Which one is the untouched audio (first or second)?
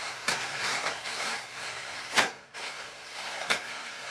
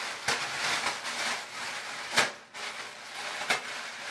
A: second